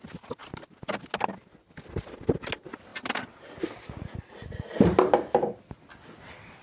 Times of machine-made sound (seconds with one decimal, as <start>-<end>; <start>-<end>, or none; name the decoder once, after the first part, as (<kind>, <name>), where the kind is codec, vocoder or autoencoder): none